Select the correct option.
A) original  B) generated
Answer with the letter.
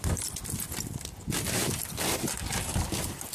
A